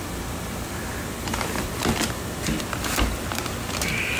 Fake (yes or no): no